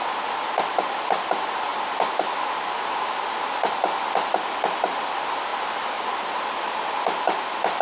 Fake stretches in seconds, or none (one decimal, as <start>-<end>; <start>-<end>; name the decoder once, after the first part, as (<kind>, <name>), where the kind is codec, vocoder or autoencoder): none